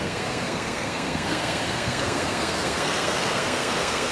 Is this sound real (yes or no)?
no